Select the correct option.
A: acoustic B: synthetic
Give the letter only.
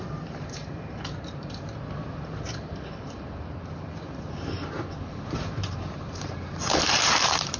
B